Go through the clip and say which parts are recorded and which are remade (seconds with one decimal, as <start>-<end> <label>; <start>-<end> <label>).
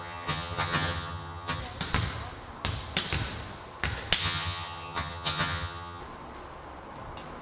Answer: 0.0-1.6 remade; 1.6-4.2 recorded; 4.2-6.0 remade; 6.0-7.4 recorded